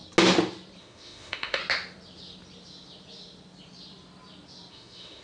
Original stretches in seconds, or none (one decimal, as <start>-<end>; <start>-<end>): 0.0-0.8; 1.6-4.7